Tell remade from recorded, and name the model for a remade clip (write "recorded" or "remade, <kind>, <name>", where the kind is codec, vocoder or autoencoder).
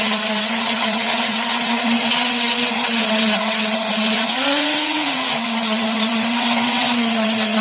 remade, vocoder, WaveNeXt